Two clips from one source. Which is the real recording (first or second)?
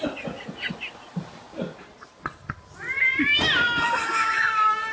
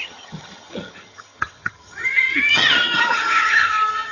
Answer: first